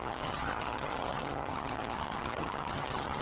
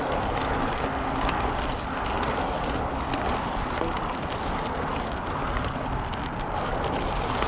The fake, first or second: first